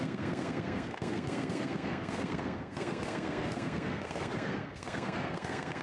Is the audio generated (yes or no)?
yes